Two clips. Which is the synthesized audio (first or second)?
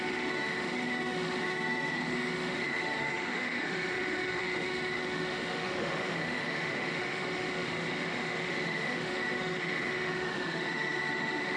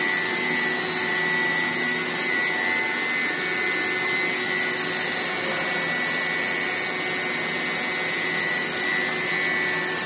first